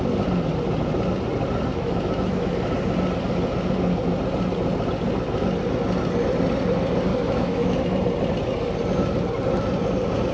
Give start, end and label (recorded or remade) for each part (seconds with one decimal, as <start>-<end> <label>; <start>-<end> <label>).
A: 0.0-1.7 recorded; 1.7-2.5 remade; 2.5-7.1 recorded; 7.1-7.9 remade; 7.9-10.3 recorded

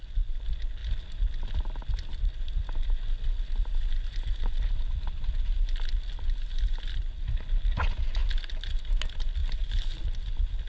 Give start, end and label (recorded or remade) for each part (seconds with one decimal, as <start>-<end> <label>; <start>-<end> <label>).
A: 0.0-10.7 recorded

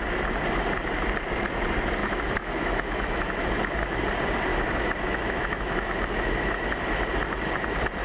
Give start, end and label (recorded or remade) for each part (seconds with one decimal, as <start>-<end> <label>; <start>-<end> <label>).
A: 0.0-2.0 recorded; 2.0-4.0 remade; 4.0-4.5 recorded; 4.5-6.7 remade; 6.7-8.0 recorded

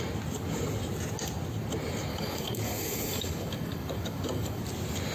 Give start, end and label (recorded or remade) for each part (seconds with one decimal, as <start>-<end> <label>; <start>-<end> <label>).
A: 0.0-2.1 recorded; 2.1-4.6 remade; 4.6-5.1 recorded

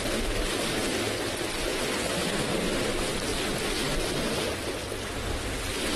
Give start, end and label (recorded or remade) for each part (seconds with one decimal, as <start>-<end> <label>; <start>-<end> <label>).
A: 0.0-0.8 recorded; 0.8-2.0 remade; 2.0-6.0 recorded